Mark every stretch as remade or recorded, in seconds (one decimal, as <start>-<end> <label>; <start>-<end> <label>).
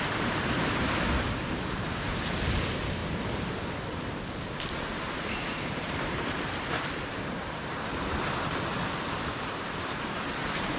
0.0-3.0 remade; 3.0-5.3 recorded; 5.3-8.7 remade; 8.7-9.7 recorded; 9.7-10.8 remade